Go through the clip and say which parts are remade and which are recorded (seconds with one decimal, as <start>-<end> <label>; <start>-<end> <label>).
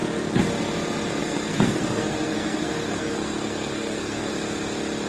0.0-1.2 recorded; 1.2-4.3 remade; 4.3-5.1 recorded